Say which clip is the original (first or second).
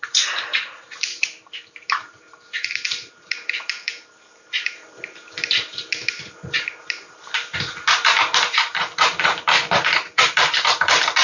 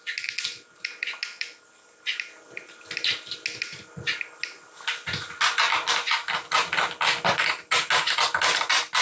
second